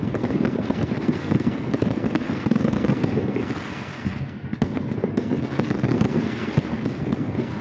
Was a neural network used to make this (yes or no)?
yes